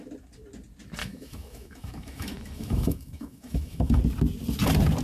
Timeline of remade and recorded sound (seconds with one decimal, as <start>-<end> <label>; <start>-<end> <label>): 0.0-1.0 recorded; 1.0-4.0 remade; 4.0-5.0 recorded